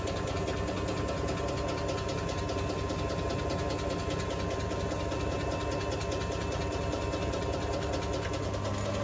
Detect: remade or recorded recorded